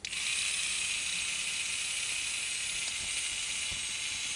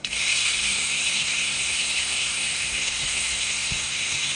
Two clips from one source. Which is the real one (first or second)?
first